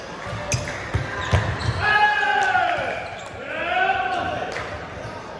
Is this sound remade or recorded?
recorded